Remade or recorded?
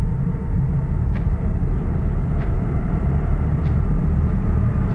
remade